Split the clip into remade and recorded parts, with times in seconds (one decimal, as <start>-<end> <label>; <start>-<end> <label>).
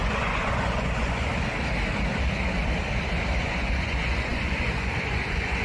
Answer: 0.0-1.3 remade; 1.3-3.4 recorded; 3.4-5.6 remade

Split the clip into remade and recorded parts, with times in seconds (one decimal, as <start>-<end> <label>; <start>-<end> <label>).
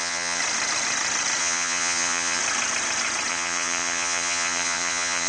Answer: 0.0-0.4 remade; 0.4-1.4 recorded; 1.4-2.4 remade; 2.4-3.3 recorded; 3.3-5.3 remade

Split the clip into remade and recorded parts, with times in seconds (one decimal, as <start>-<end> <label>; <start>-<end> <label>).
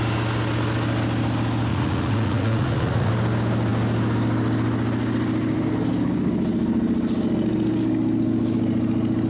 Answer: 0.0-1.7 recorded; 1.7-3.1 remade; 3.1-9.3 recorded